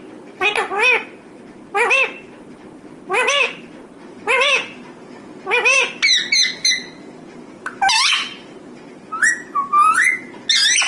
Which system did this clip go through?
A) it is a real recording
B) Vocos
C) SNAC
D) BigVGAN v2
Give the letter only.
A